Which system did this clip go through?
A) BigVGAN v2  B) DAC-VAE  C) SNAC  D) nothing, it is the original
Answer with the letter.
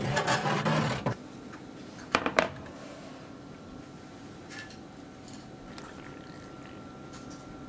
A